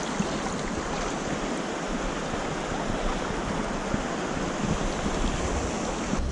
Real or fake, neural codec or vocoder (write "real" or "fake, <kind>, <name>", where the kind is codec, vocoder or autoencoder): real